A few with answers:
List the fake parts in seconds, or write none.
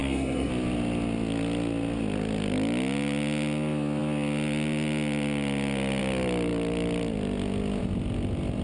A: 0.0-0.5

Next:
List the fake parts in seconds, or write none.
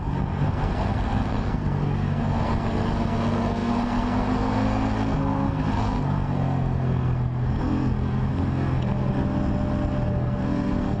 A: 0.0-9.2; 10.1-11.0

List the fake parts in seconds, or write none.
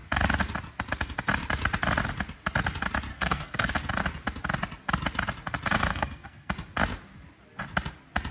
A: 3.1-3.7; 5.9-6.5